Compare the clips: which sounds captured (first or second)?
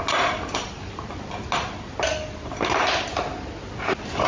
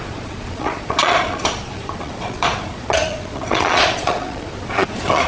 first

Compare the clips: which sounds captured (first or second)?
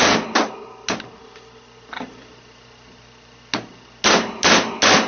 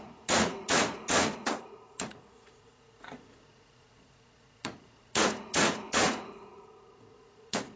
first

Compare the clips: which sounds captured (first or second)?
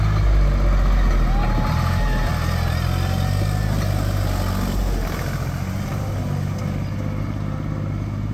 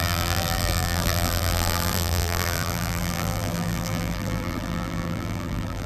first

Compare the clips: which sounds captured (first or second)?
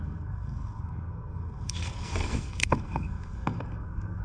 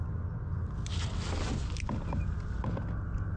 second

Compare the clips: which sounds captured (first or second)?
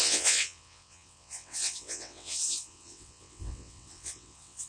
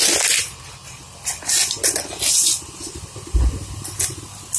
second